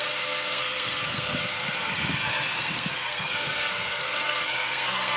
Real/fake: fake